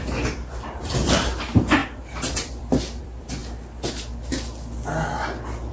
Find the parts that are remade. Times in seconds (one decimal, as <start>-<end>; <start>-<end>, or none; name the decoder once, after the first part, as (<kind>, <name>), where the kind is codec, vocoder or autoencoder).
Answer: 0.0-3.4 (vocoder, BigVGAN v2)